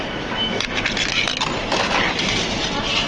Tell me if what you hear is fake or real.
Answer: real